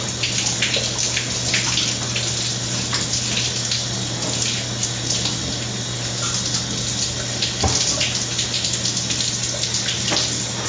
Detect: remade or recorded recorded